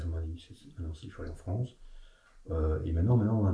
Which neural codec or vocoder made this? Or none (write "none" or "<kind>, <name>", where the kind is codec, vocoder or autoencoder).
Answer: none